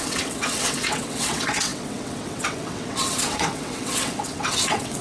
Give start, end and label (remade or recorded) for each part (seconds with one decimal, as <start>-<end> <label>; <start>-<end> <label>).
0.0-5.0 remade